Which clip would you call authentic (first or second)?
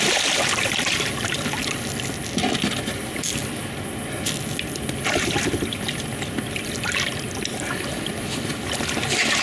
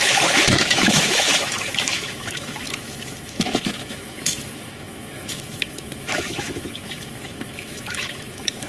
first